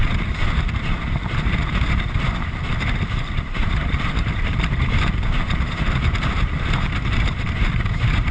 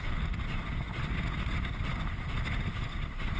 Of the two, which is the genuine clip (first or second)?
second